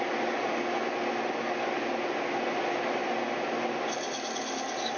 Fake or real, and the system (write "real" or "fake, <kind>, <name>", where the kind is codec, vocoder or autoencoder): real